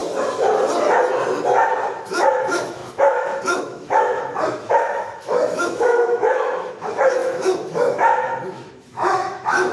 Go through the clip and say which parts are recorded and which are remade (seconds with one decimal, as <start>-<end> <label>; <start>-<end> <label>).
0.0-2.1 recorded; 2.1-9.7 remade